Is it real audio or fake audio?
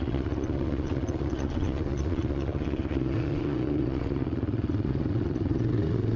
fake